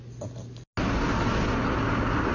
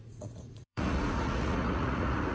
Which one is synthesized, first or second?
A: second